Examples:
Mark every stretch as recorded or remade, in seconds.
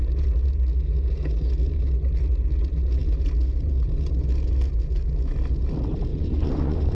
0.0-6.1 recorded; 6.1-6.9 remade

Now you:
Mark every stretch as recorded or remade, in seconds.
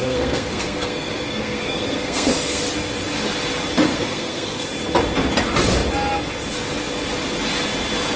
0.0-2.6 remade; 2.6-3.9 recorded; 3.9-4.6 remade; 4.6-8.2 recorded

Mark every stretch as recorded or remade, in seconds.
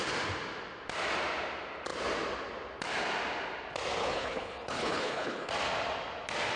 0.0-4.0 recorded; 4.0-5.5 remade; 5.5-6.6 recorded